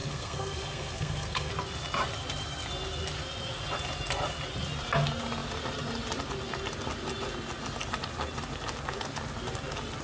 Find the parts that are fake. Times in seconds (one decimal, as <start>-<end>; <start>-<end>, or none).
0.0-1.5